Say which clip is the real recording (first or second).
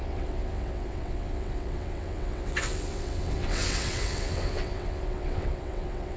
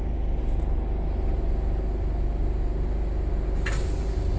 second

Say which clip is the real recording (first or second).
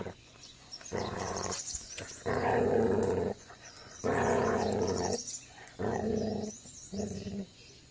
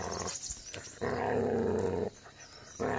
second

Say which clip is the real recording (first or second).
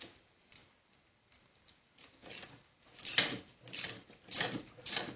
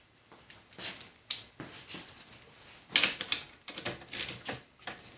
second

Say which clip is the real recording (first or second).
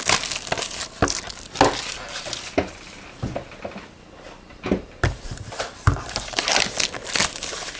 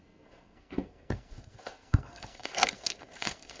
first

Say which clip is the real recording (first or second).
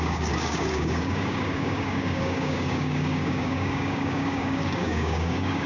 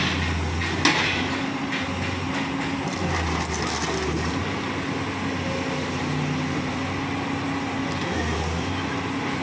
second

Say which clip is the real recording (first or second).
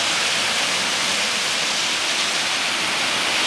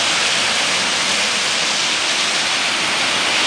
second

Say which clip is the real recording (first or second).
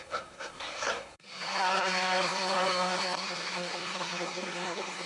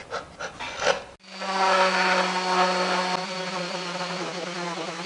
second